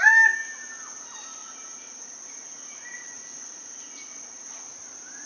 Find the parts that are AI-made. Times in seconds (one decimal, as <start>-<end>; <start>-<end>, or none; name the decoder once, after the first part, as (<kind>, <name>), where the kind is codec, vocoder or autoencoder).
1.4-4.6 (vocoder, Vocos)

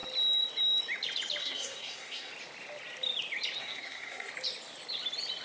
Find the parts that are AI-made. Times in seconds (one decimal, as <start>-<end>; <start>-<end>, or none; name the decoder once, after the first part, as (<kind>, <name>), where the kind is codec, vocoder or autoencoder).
1.4-2.3 (codec, SNAC); 3.6-4.3